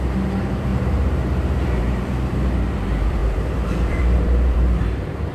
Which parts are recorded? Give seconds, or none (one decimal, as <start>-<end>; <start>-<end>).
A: 0.7-1.8